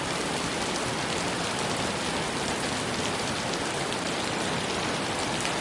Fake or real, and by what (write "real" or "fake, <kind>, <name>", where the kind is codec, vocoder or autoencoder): fake, vocoder, BigVGAN v2